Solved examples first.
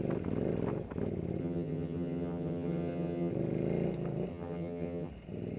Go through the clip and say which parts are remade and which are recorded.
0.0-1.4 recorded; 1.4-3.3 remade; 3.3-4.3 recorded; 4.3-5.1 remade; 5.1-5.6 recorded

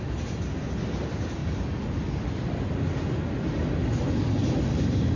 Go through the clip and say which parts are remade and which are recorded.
0.0-5.2 recorded

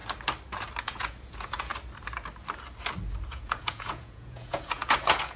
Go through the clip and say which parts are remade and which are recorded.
0.0-0.8 recorded; 0.8-1.7 remade; 1.7-3.3 recorded; 3.3-5.4 remade

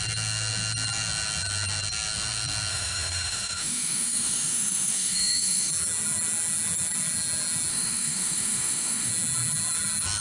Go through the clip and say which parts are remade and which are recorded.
0.0-2.7 recorded; 2.7-5.7 remade; 5.7-7.7 recorded; 7.7-9.1 remade; 9.1-10.2 recorded

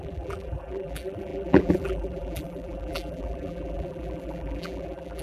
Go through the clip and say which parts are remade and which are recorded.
0.0-5.2 remade

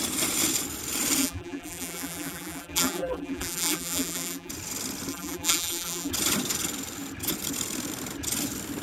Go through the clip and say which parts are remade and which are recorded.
0.0-1.2 recorded; 1.2-4.5 remade; 4.5-5.1 recorded; 5.1-6.1 remade; 6.1-8.8 recorded

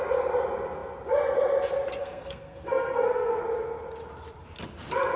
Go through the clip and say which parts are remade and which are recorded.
0.0-2.0 recorded; 2.0-3.4 remade; 3.4-5.2 recorded